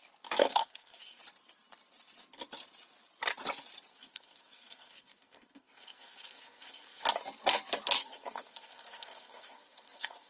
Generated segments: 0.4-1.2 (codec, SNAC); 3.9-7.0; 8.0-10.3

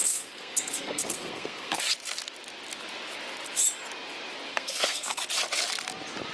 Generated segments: 0.0-1.8 (codec, SNAC); 4.5-5.2

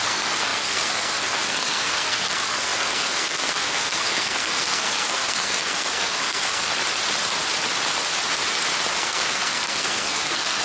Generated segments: 0.0-6.7 (codec, SNAC); 8.9-10.6

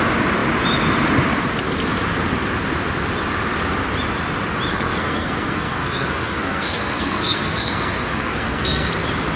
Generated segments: 4.7-8.9 (codec, SNAC)